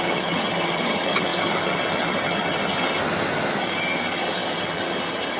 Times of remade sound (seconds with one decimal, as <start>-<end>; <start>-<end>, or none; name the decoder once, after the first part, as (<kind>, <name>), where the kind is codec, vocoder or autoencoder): 0.0-3.0 (vocoder, HiFi-GAN); 3.6-5.4